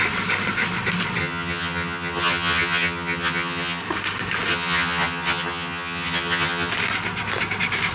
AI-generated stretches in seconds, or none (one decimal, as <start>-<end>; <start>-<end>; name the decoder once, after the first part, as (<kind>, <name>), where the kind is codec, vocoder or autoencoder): 1.2-3.8 (vocoder, HiFi-GAN); 4.5-6.7